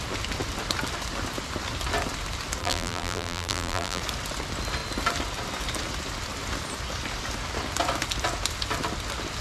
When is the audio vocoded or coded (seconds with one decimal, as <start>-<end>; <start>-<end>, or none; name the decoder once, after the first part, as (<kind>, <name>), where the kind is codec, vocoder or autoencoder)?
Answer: 2.6-4.0 (vocoder, BigVGAN v2)